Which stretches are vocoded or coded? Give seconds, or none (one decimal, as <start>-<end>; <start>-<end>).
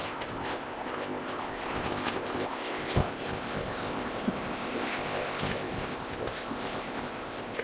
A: 0.0-7.6